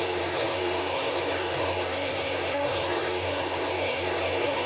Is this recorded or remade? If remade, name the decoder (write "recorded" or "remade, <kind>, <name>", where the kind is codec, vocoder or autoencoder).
remade, codec, SNAC